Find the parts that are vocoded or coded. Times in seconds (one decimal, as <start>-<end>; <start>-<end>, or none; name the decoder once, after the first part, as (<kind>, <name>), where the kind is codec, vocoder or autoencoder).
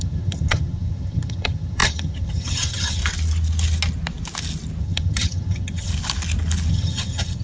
0.0-3.0 (vocoder, HiFi-GAN); 4.8-5.9; 6.7-7.4